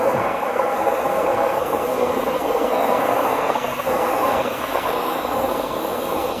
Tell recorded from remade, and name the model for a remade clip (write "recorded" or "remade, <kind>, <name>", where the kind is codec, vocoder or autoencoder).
remade, codec, SNAC